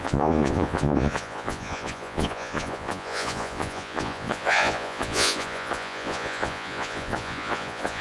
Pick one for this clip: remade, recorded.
remade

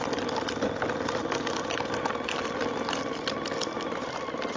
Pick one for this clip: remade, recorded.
recorded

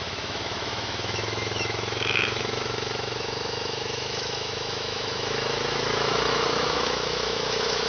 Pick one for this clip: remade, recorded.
remade